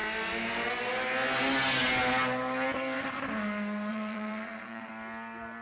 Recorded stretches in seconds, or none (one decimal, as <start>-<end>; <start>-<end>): 0.0-3.9; 4.9-5.6